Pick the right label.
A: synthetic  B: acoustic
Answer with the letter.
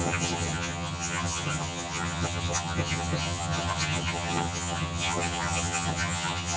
A